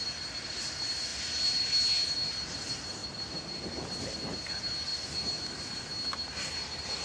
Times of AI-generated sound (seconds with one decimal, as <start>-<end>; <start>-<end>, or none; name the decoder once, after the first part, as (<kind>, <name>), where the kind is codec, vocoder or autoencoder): none